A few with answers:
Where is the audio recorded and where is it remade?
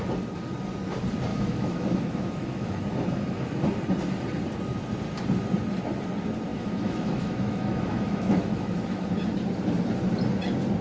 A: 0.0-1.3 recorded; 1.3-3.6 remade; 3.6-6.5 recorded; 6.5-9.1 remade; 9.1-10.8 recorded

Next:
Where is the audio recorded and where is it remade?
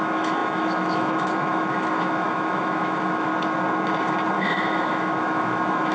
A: 0.0-3.3 remade; 3.3-4.3 recorded; 4.3-5.9 remade